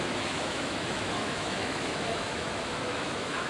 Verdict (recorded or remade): remade